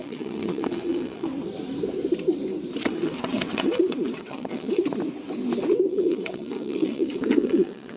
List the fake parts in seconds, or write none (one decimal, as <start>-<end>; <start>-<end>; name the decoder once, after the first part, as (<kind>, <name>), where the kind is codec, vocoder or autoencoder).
0.0-1.3 (vocoder, WaveNeXt); 2.8-4.8; 5.9-8.0